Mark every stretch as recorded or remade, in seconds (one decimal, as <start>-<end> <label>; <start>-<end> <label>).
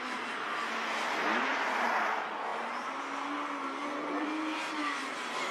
0.0-2.5 recorded; 2.5-3.0 remade; 3.0-3.8 recorded; 3.8-5.5 remade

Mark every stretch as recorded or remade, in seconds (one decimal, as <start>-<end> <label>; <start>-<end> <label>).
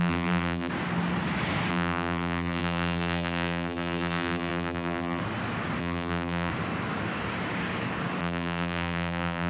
0.0-0.7 remade; 0.7-1.7 recorded; 1.7-5.2 remade; 5.2-5.8 recorded; 5.8-6.5 remade; 6.5-8.2 recorded; 8.2-9.5 remade